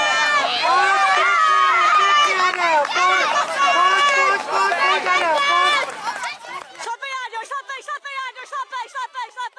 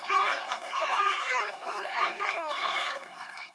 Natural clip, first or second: first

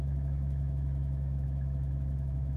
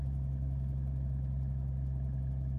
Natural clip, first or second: second